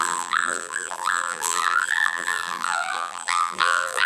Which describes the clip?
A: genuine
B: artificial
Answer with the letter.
B